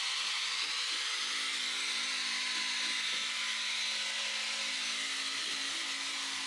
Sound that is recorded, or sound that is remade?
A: recorded